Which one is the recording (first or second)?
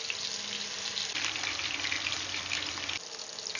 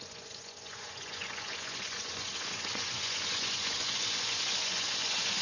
first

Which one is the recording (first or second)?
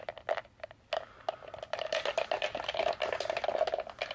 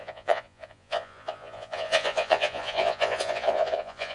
first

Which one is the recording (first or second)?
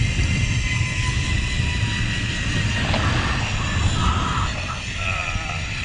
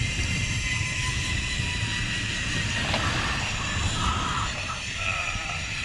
first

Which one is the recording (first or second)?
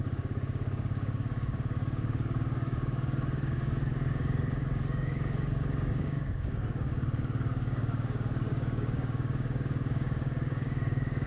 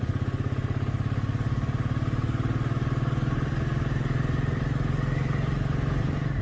second